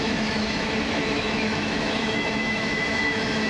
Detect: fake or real fake